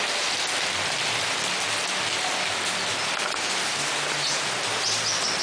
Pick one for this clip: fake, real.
real